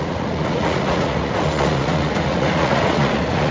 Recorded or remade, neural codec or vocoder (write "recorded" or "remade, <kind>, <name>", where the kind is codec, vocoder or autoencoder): remade, vocoder, Vocos